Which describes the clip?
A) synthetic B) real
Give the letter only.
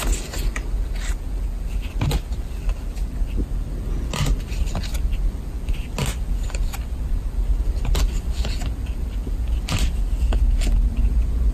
B